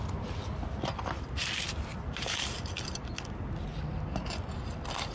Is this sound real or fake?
real